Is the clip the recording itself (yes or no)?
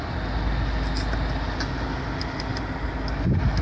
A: yes